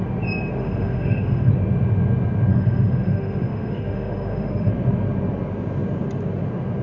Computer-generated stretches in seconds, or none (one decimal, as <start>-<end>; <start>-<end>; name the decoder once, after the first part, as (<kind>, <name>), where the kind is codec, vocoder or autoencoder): 0.6-1.5 (autoencoder, DAC-VAE); 2.5-4.7